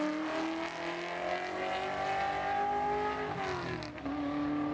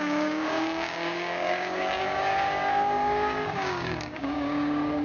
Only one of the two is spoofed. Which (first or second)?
second